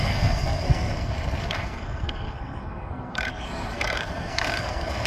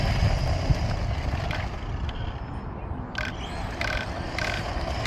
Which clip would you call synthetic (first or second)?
first